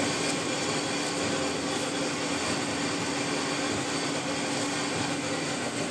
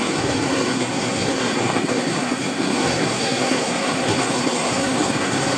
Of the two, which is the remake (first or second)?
second